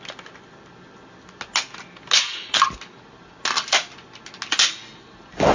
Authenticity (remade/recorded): recorded